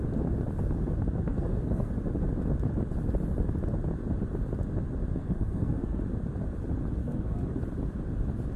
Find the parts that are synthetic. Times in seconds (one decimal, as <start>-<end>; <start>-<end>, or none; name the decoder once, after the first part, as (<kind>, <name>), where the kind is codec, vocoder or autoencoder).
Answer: 1.3-1.9 (codec, SNAC); 5.2-6.0; 7.0-7.6